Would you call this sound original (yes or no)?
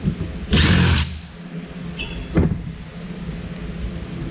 yes